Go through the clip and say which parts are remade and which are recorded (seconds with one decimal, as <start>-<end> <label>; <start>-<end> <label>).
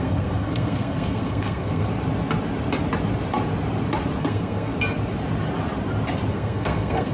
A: 0.0-1.9 remade; 1.9-4.2 recorded; 4.2-4.7 remade; 4.7-6.3 recorded; 6.3-7.1 remade